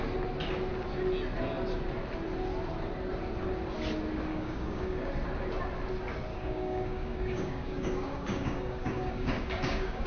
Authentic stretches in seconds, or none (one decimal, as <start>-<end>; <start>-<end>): 0.0-4.3; 5.1-6.3